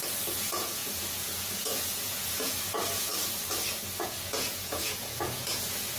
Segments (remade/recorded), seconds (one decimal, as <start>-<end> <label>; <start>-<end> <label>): 0.0-3.1 remade; 3.1-3.7 recorded; 3.7-6.0 remade